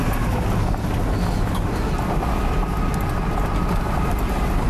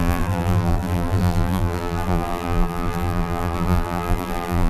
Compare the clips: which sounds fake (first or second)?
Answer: second